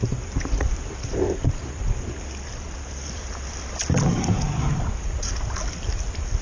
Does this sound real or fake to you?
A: real